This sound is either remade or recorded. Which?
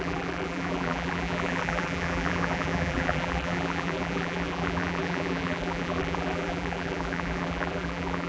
remade